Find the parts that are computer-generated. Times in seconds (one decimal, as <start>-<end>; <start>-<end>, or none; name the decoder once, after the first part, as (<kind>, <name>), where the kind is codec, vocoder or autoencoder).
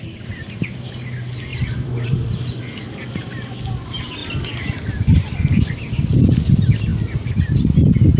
1.5-2.4 (vocoder, BigVGAN v2)